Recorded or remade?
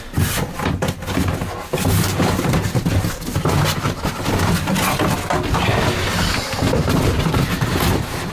recorded